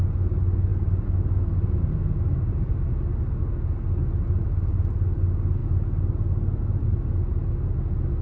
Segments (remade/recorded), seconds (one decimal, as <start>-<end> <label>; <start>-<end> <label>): 0.0-8.2 recorded